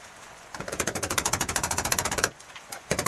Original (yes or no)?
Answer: no